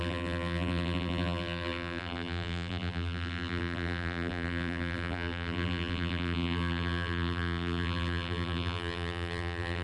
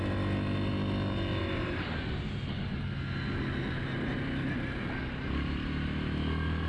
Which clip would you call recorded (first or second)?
second